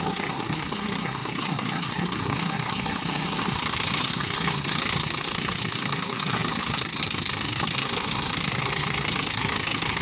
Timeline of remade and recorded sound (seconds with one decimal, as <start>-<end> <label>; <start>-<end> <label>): 0.0-10.0 remade